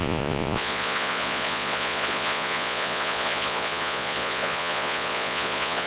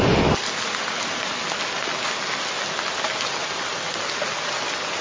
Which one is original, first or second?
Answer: second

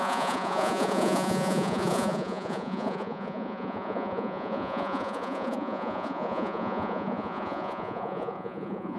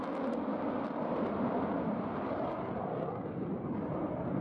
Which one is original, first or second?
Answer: second